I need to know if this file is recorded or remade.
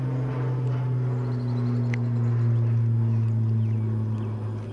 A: recorded